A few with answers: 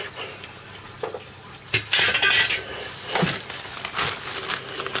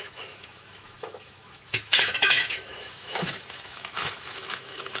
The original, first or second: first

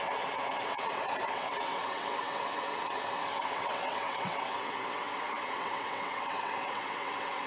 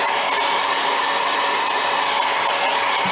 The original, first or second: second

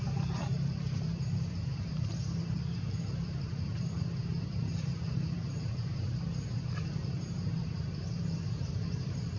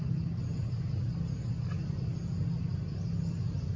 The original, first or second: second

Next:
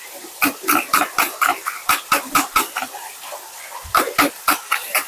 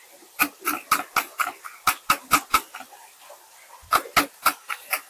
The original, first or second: second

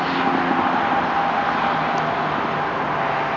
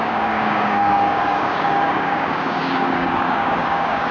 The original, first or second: first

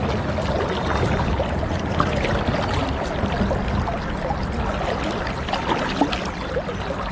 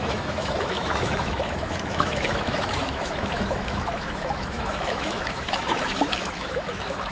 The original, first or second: first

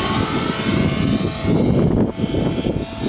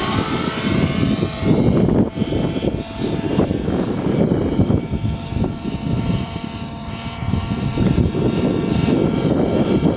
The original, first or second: first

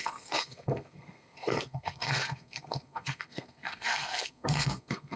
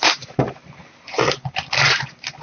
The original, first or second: second